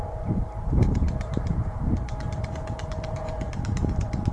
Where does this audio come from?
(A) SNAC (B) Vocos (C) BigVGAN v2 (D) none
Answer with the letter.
C